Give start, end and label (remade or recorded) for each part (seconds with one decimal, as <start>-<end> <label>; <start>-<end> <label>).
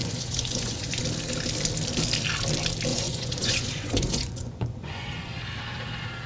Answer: 0.0-1.0 remade; 1.0-2.9 recorded; 2.9-5.3 remade; 5.3-6.3 recorded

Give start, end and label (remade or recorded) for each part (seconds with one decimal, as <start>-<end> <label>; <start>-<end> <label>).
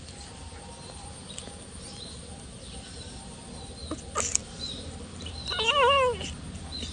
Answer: 0.0-4.4 recorded; 4.4-5.3 remade; 5.3-6.9 recorded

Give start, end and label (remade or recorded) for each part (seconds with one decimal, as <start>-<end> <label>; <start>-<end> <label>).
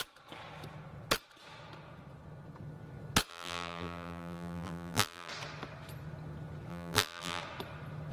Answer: 0.0-3.3 recorded; 3.3-5.3 remade; 5.3-6.7 recorded; 6.7-7.4 remade; 7.4-8.1 recorded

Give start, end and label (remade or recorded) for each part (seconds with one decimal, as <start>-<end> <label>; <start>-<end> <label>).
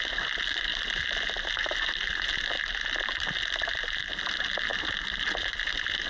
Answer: 0.0-6.1 recorded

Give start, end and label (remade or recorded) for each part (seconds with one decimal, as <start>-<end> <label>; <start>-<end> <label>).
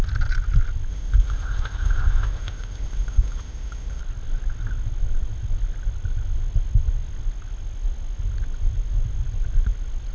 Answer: 0.0-0.9 recorded; 0.9-4.0 remade; 4.0-10.1 recorded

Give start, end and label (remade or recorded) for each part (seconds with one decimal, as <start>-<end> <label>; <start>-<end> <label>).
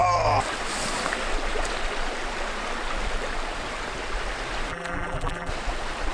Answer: 0.0-4.7 recorded; 4.7-5.5 remade; 5.5-6.1 recorded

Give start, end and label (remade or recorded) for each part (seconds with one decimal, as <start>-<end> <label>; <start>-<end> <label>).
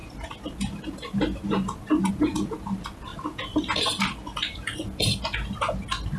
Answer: 0.0-6.2 recorded